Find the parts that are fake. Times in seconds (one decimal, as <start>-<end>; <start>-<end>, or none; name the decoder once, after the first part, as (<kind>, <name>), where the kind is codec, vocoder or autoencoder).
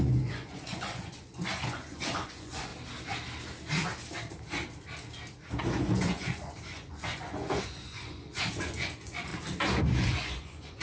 0.0-2.7 (vocoder, Vocos); 5.6-9.3; 10.0-10.8